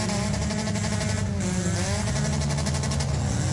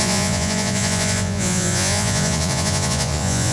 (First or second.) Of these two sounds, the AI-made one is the second